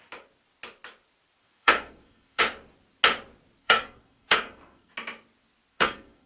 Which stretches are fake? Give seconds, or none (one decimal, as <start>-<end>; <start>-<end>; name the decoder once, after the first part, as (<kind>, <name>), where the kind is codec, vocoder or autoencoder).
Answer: 1.4-2.4 (codec, SNAC); 3.6-4.9; 5.7-6.3